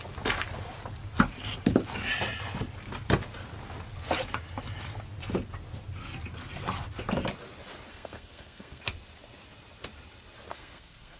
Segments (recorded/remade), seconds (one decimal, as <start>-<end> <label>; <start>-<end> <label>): 0.0-7.9 recorded; 7.9-8.8 remade; 8.8-10.5 recorded; 10.5-11.2 remade